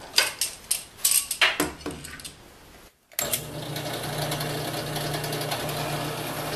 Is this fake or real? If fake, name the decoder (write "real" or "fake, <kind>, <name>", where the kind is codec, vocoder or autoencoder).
real